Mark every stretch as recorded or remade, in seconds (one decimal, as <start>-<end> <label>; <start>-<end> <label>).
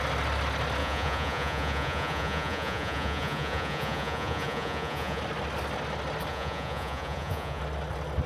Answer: 0.0-0.8 recorded; 0.8-5.2 remade; 5.2-6.3 recorded; 6.3-7.6 remade; 7.6-8.3 recorded